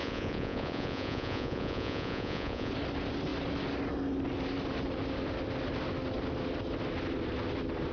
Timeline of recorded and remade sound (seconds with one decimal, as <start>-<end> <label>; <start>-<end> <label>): 0.0-2.7 remade; 2.7-7.9 recorded